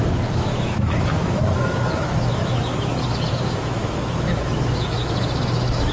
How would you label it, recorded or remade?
remade